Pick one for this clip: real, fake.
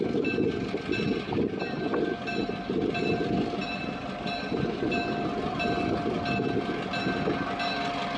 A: real